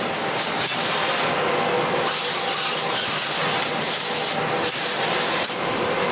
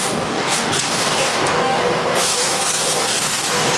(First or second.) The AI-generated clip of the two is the second